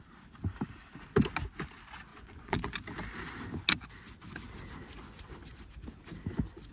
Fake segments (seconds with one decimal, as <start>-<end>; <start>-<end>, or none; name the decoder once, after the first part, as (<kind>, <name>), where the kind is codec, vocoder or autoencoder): 2.1-2.7 (vocoder, Vocos)

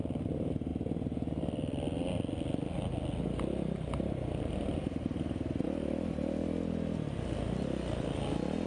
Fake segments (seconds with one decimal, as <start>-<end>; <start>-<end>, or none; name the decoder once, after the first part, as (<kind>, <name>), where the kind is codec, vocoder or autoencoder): none